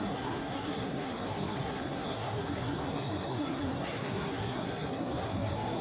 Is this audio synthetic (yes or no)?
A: yes